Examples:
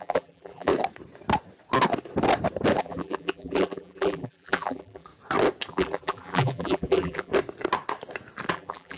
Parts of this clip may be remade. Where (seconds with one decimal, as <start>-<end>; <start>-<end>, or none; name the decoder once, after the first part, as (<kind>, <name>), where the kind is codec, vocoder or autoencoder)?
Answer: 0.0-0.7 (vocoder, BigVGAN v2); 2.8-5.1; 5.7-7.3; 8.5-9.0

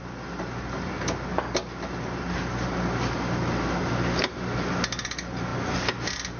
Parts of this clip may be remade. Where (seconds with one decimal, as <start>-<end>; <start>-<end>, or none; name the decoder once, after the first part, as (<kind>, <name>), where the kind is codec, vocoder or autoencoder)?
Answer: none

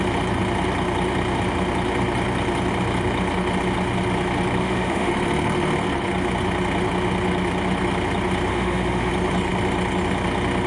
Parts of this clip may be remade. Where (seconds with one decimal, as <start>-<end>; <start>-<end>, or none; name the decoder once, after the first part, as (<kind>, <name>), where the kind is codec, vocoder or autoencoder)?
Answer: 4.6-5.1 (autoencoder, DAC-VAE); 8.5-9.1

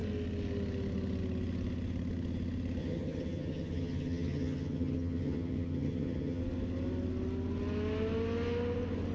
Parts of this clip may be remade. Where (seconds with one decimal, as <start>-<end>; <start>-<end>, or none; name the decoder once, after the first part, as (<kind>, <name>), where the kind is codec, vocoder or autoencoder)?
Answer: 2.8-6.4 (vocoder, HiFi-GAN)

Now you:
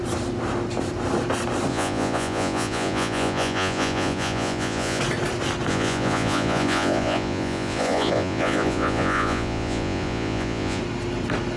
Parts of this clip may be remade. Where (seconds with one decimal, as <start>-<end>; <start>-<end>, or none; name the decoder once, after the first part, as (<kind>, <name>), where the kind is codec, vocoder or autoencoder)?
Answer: 1.7-5.0 (vocoder, Vocos); 5.7-10.8

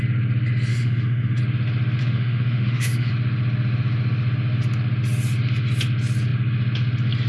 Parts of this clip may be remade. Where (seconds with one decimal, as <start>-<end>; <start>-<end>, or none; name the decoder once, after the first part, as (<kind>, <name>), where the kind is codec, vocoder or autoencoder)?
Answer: 0.7-1.4 (autoencoder, DAC-VAE); 2.0-3.1